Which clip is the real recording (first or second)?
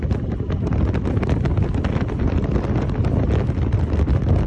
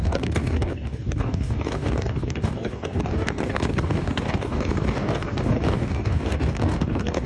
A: first